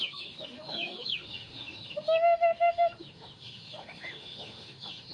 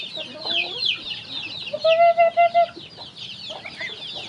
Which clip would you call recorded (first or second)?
second